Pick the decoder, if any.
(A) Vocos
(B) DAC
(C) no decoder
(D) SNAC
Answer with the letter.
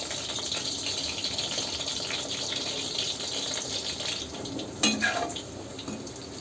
C